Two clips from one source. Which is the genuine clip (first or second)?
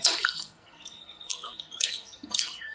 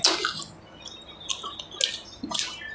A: second